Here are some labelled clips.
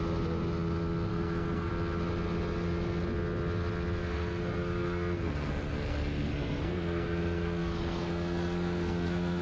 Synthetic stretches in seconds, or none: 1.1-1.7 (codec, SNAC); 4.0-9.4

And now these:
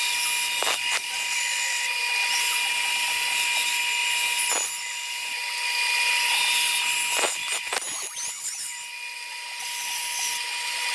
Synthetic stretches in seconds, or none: none

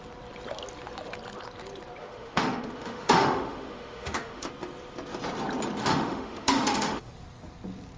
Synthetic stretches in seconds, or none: 2.0-4.5 (autoencoder, DAC-VAE); 5.8-7.1

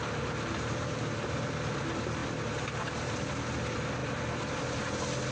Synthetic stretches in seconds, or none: none